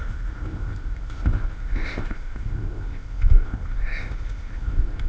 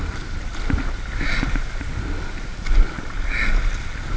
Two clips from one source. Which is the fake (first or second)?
first